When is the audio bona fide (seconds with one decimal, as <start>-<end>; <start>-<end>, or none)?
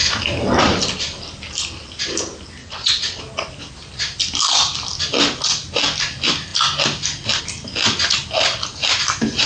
0.0-2.6; 3.2-9.5